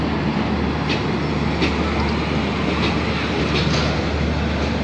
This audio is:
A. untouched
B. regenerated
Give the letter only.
A